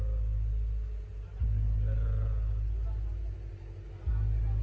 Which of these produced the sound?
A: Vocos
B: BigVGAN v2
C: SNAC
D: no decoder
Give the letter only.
D